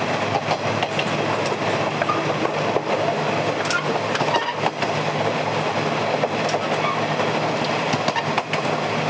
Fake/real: real